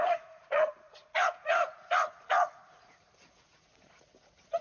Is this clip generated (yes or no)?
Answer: yes